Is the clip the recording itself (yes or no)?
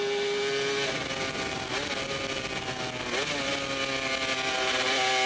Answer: yes